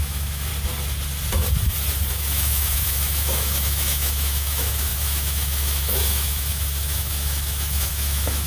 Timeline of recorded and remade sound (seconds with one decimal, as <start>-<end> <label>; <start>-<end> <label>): 0.0-0.5 remade; 0.5-2.1 recorded; 2.1-8.5 remade